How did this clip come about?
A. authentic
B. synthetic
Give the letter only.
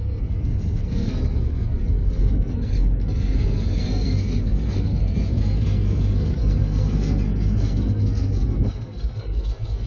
B